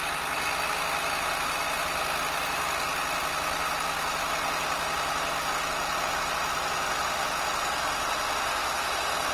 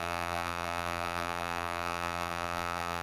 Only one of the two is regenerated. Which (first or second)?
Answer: second